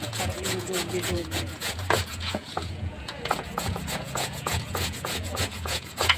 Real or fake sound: fake